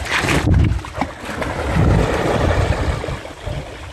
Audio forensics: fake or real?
real